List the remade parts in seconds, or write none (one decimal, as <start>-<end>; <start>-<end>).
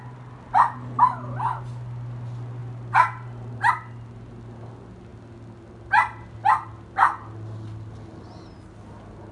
2.6-3.7